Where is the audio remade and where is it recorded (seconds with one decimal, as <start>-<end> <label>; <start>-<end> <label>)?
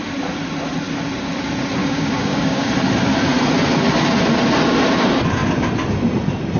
0.0-1.8 recorded; 1.8-2.7 remade; 2.7-6.6 recorded